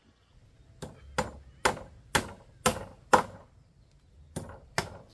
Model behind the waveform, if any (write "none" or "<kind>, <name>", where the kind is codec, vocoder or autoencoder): none